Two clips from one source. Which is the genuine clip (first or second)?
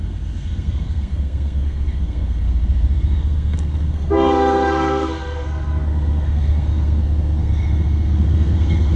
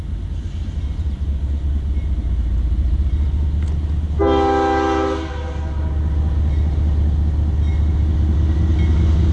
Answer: second